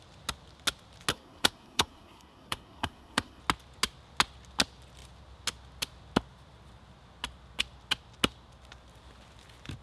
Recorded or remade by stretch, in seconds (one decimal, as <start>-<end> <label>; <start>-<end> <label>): 0.0-1.1 recorded; 1.1-3.4 remade; 3.4-9.8 recorded